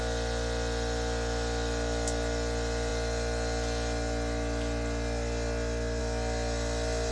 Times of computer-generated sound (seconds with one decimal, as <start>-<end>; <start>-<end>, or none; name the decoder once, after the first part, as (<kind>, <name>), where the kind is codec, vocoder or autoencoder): none